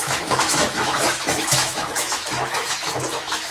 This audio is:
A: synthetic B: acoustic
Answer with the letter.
A